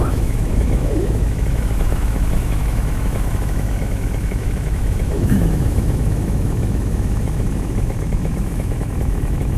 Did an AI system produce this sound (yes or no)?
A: yes